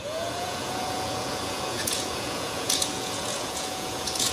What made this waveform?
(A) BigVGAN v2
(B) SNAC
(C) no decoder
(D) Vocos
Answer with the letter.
D